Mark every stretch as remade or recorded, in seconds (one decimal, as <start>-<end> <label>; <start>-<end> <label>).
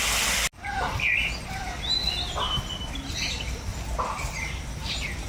0.0-3.7 recorded; 3.7-4.6 remade; 4.6-5.3 recorded